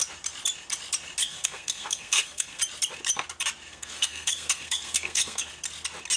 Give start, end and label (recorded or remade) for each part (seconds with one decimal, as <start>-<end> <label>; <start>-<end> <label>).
0.0-1.2 recorded; 1.2-2.6 remade; 2.6-3.7 recorded; 3.7-5.5 remade; 5.5-6.2 recorded